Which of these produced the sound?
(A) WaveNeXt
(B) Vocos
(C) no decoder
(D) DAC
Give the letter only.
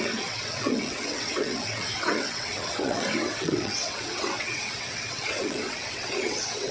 A